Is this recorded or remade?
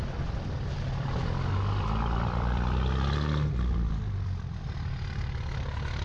remade